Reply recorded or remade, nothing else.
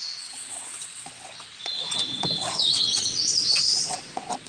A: remade